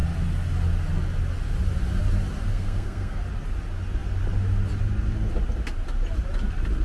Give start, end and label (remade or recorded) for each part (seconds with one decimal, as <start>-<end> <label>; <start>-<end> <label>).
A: 0.0-2.5 recorded; 2.5-3.2 remade; 3.2-6.8 recorded